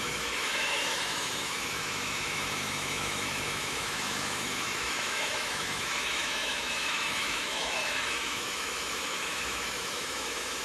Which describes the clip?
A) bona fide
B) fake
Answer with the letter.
B